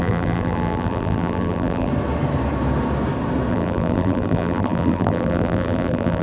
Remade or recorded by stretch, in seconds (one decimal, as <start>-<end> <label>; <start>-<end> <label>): 0.0-1.9 remade; 1.9-3.5 recorded; 3.5-6.2 remade